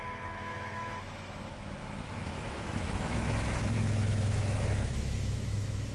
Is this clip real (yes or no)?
no